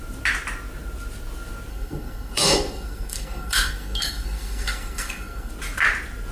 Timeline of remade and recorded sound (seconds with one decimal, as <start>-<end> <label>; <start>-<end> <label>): 0.0-1.7 recorded; 1.7-5.5 remade; 5.5-6.3 recorded